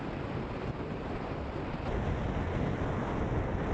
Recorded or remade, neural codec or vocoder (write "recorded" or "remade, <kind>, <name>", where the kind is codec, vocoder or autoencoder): recorded